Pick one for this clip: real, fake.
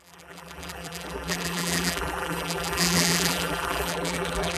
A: fake